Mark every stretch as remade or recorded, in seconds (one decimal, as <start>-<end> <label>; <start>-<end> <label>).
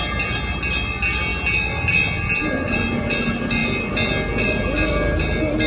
0.0-5.7 recorded